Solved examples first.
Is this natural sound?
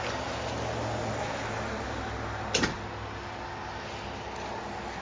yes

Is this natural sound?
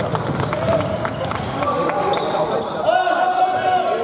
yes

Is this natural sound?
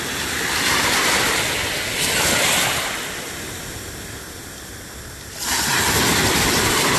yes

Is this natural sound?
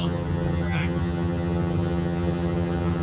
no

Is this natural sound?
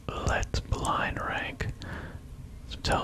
yes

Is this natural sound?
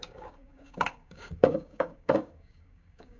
no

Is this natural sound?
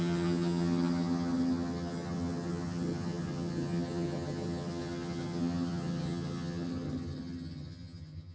no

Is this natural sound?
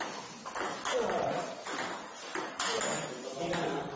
yes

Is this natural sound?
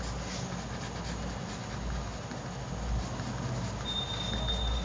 yes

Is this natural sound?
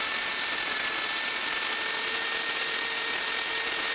yes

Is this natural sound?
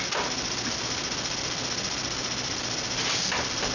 yes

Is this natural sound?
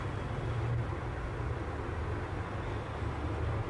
yes